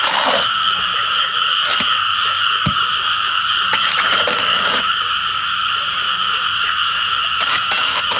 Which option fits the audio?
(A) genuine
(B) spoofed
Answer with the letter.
B